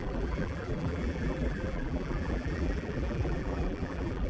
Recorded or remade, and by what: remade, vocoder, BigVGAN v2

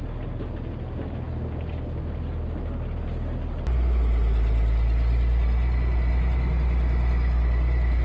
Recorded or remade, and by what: recorded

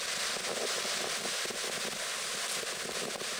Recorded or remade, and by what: recorded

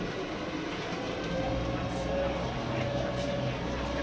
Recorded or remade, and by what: recorded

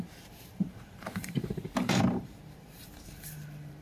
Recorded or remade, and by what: remade, vocoder, BigVGAN v2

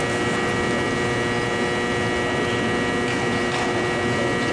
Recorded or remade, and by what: recorded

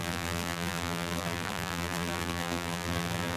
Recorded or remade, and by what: remade, vocoder, BigVGAN v2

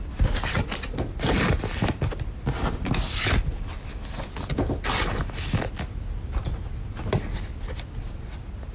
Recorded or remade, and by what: recorded